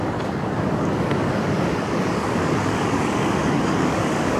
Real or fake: fake